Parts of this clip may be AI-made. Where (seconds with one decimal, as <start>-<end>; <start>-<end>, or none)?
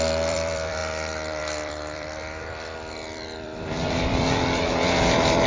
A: 0.0-5.5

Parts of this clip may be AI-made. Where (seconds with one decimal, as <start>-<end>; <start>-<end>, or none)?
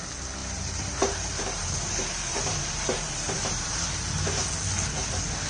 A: 0.4-3.7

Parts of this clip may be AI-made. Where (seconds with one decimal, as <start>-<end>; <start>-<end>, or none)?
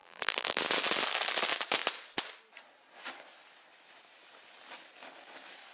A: 0.0-0.6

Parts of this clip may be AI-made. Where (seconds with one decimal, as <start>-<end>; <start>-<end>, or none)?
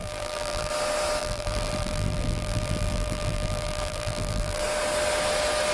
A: 0.0-0.7; 1.2-4.6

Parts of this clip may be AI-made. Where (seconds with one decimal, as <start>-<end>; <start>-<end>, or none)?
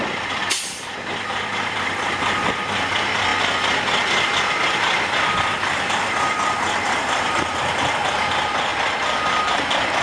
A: 0.0-3.3; 5.3-8.7; 9.4-10.0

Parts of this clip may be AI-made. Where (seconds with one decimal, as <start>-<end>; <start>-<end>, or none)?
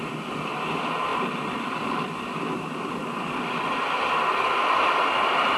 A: 1.1-2.0